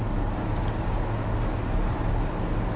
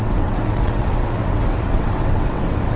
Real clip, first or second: first